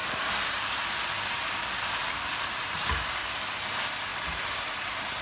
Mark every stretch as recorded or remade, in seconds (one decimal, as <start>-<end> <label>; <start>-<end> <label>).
0.0-0.6 remade; 0.6-4.1 recorded; 4.1-5.2 remade